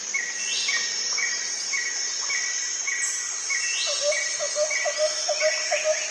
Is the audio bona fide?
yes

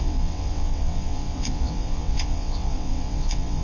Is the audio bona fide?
no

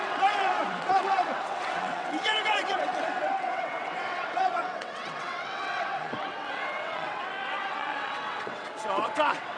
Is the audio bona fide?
no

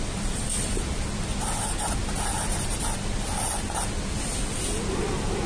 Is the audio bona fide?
yes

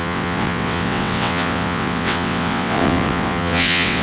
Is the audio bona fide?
no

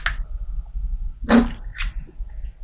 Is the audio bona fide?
yes